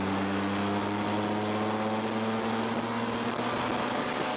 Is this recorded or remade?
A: recorded